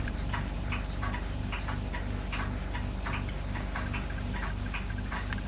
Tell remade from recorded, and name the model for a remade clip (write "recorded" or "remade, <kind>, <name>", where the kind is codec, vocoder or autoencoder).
recorded